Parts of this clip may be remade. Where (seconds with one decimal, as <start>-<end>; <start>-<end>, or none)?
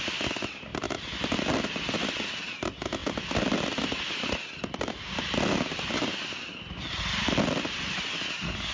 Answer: none